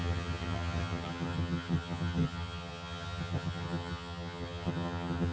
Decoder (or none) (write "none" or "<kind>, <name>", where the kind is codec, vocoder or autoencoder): vocoder, HiFi-GAN